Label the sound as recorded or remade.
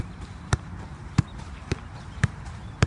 remade